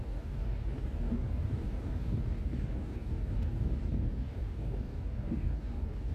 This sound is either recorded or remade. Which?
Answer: remade